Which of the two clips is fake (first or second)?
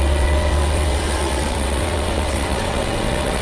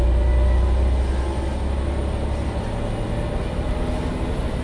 first